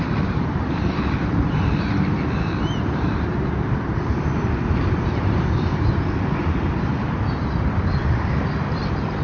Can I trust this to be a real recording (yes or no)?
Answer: no